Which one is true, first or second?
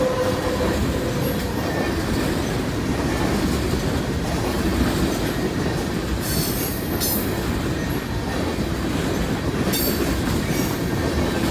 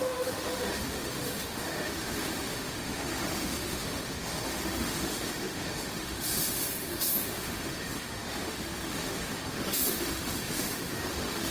first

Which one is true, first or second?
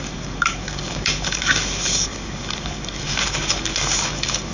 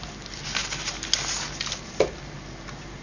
second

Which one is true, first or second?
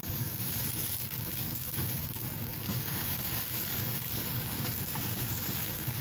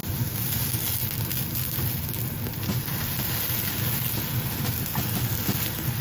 second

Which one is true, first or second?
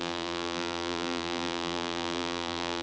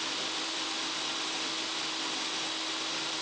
second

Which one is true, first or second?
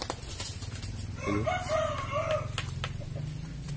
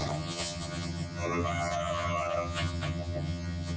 first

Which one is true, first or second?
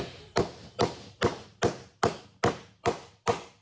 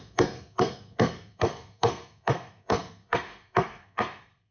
first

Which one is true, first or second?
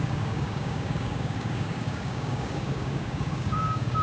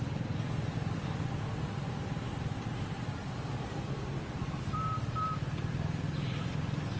second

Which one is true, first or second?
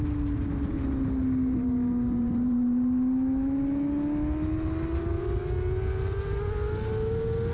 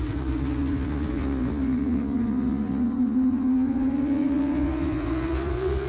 first